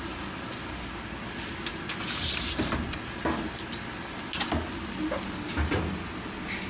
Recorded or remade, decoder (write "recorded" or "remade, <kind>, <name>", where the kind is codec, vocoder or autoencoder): recorded